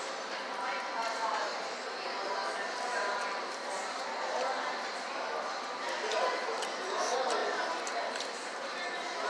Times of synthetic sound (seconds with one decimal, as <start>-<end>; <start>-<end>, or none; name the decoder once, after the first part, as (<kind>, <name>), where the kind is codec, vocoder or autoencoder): none